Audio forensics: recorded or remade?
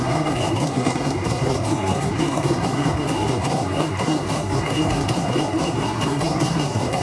remade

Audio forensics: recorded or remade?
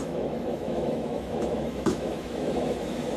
remade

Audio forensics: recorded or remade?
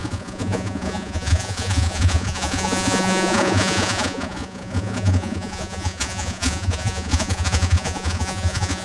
remade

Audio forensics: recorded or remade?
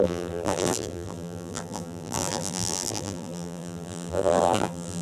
remade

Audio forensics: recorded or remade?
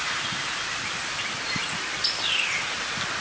recorded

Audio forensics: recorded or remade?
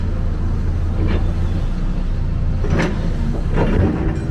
recorded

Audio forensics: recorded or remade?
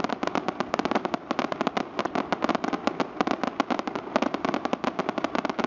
recorded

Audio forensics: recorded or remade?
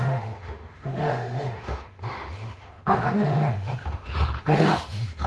remade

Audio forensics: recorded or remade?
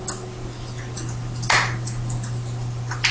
recorded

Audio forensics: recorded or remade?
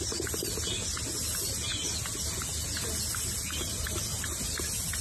recorded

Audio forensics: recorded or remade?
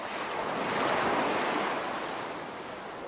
recorded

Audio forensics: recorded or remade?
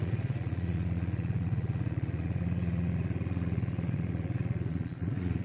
remade